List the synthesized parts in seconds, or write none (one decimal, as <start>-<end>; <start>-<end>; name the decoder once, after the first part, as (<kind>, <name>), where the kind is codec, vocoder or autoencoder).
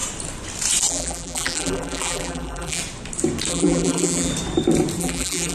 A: 0.9-2.8 (vocoder, BigVGAN v2); 3.5-4.3; 5.0-5.5